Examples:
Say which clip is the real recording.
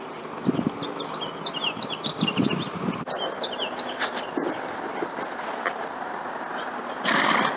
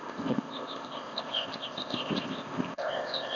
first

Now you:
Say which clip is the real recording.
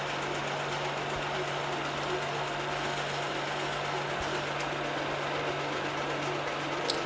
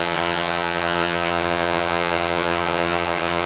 first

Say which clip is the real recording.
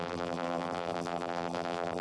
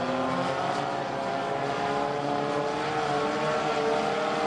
second